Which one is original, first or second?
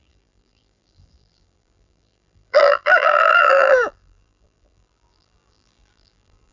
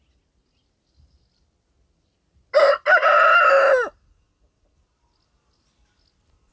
second